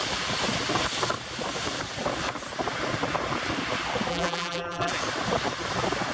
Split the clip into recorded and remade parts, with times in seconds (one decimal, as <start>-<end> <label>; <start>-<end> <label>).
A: 0.0-4.1 recorded; 4.1-4.9 remade; 4.9-6.1 recorded